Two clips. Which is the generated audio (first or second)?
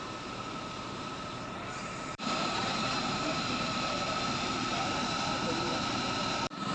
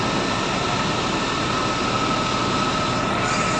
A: first